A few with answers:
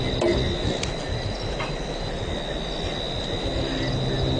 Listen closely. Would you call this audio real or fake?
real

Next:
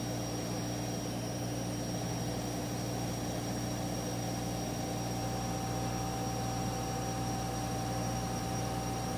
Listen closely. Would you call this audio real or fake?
real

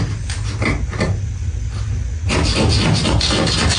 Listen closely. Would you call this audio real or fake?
real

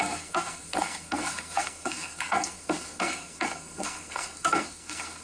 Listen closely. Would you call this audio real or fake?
fake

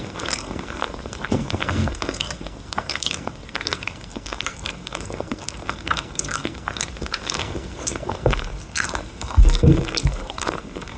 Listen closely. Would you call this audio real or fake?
fake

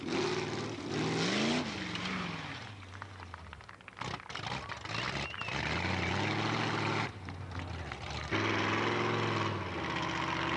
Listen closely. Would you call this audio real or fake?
real